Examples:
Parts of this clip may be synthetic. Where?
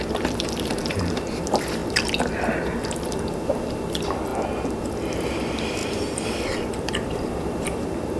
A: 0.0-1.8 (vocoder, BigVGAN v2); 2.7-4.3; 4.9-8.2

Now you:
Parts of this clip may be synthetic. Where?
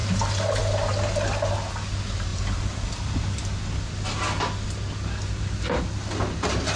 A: none